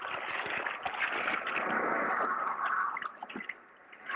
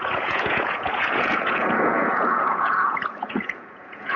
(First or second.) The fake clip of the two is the second